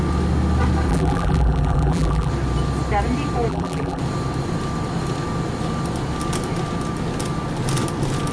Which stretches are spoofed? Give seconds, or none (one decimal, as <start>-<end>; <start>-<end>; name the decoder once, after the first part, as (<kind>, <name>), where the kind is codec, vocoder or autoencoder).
0.9-2.3 (vocoder, BigVGAN v2); 3.5-4.0